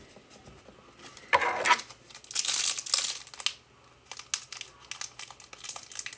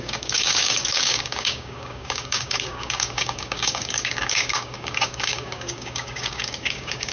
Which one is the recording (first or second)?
first